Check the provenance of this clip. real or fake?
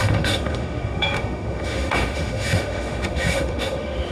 fake